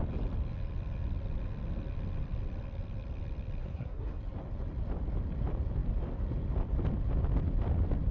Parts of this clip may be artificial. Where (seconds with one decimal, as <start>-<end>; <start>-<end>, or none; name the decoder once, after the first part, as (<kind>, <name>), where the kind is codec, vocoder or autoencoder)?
3.6-4.2 (codec, SNAC)